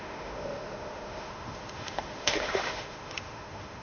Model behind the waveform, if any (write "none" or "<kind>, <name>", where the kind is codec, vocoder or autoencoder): autoencoder, DAC-VAE